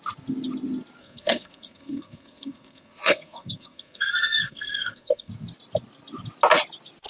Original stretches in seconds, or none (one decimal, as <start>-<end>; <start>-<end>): 0.0-1.0; 5.3-7.1